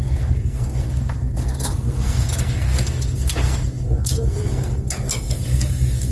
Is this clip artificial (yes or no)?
yes